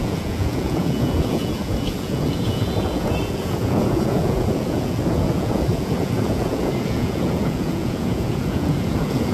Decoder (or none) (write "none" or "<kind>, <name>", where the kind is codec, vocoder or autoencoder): vocoder, Vocos